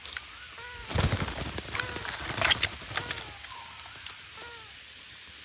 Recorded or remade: recorded